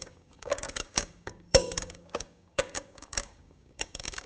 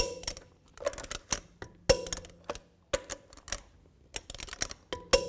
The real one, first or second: second